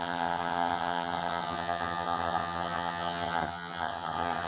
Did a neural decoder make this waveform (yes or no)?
yes